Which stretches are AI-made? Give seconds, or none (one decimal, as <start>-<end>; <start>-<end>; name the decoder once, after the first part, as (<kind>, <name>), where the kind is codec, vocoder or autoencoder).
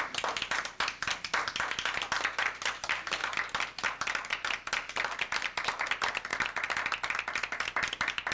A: none